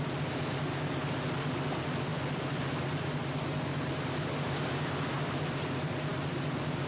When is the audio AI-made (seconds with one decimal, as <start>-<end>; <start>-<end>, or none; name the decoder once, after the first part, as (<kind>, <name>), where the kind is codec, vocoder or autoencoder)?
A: none